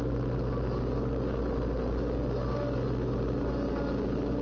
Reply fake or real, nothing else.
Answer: real